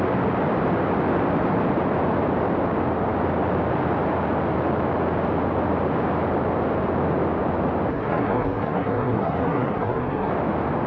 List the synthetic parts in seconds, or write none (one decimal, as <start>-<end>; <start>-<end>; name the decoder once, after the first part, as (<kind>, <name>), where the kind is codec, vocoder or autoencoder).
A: 7.9-10.3 (codec, SNAC)